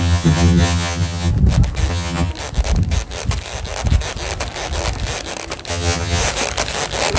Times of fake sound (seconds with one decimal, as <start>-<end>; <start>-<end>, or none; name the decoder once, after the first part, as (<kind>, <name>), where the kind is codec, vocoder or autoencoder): 0.0-1.3 (vocoder, HiFi-GAN); 1.9-2.3; 5.7-6.2